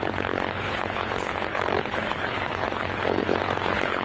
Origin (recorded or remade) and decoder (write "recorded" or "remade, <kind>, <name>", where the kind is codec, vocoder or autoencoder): remade, codec, HILCodec